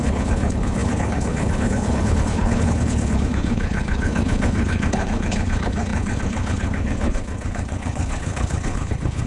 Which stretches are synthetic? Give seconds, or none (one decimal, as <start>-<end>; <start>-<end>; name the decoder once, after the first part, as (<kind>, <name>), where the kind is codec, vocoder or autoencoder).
0.0-9.3 (codec, HILCodec)

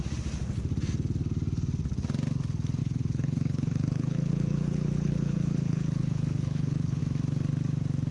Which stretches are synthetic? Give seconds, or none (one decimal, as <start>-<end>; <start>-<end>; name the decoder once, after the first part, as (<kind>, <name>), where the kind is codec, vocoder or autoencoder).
2.8-7.0 (codec, HILCodec)

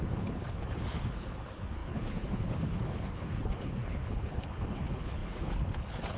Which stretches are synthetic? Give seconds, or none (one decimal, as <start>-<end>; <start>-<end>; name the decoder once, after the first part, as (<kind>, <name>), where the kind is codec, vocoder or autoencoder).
0.0-6.2 (codec, HILCodec)

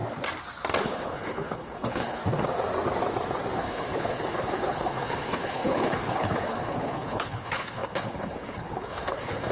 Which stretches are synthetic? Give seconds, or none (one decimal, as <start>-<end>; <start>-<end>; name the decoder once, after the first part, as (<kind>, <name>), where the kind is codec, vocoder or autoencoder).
0.8-2.2 (codec, HILCodec); 3.5-9.5

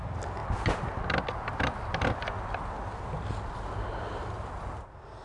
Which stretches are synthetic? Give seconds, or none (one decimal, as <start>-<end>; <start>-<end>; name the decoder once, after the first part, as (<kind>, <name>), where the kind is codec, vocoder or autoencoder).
none

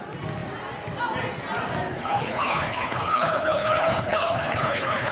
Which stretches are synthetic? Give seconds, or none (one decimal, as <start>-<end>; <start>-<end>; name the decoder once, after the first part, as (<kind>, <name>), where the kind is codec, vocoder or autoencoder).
1.9-5.1 (codec, HILCodec)